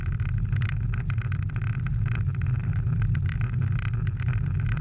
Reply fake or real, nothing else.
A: real